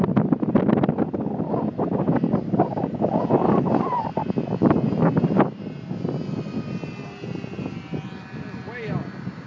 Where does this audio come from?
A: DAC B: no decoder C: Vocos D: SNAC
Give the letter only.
B